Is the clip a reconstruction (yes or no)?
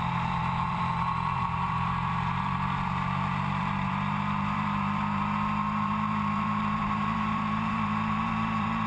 yes